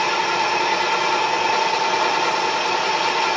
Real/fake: real